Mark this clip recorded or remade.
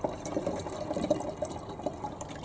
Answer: recorded